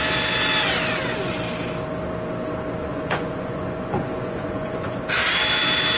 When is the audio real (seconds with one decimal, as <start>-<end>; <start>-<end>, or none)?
0.0-2.8; 5.0-6.0